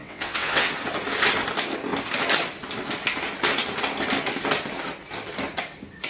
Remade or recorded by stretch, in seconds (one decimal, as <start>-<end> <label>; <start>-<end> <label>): 0.0-0.7 remade; 0.7-6.1 recorded